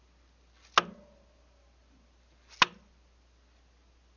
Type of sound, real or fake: real